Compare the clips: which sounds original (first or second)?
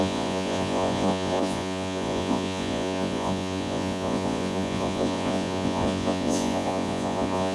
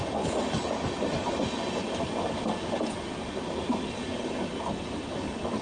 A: second